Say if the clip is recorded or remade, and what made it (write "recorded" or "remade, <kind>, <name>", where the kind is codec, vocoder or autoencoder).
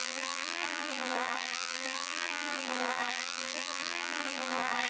remade, vocoder, BigVGAN v2